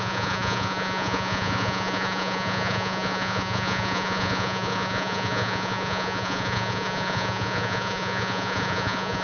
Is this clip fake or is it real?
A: fake